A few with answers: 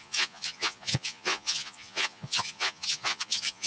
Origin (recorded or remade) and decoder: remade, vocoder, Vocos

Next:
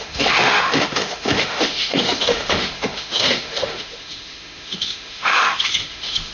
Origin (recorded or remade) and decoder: remade, autoencoder, DAC-VAE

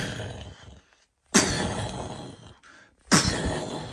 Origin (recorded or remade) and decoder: recorded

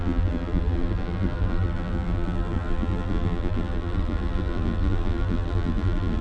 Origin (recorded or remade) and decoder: remade, vocoder, BigVGAN v2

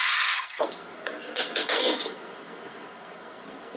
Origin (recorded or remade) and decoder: remade, codec, SNAC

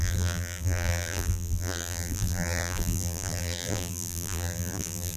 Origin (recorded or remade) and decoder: remade, vocoder, BigVGAN v2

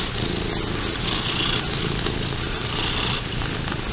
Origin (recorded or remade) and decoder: recorded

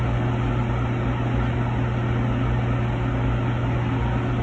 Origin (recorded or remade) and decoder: recorded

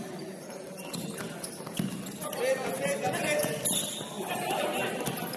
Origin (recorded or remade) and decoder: recorded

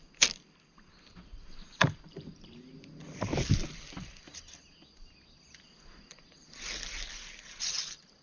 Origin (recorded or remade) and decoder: recorded